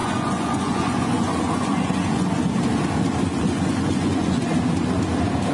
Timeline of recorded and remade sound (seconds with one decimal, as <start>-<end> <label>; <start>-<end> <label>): 0.0-2.4 remade; 2.4-3.3 recorded; 3.3-4.5 remade; 4.5-5.5 recorded